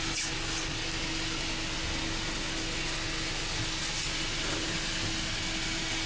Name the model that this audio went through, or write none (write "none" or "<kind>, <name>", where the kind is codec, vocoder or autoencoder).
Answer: none